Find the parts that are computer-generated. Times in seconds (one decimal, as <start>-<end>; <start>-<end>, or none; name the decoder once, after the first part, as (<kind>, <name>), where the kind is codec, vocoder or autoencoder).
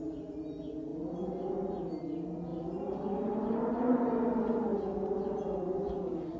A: none